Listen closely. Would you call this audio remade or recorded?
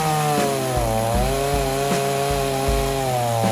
recorded